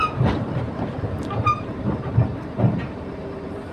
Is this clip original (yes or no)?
no